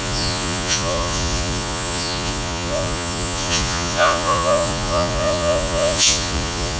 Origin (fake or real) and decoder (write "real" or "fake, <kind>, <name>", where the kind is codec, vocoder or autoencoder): fake, vocoder, Vocos